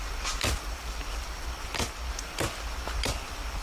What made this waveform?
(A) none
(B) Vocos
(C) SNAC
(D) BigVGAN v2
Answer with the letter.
A